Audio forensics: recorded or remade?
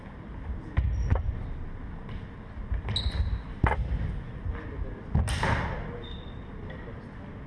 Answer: recorded